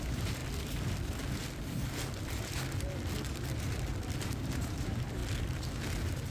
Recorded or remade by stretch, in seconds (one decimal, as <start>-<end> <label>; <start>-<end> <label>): 0.0-0.4 remade; 0.4-4.2 recorded; 4.2-5.2 remade; 5.2-6.3 recorded